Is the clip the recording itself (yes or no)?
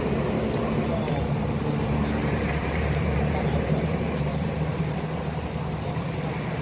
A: no